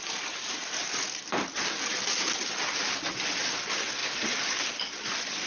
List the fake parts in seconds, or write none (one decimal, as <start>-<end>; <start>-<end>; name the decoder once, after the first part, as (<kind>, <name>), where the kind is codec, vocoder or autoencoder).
none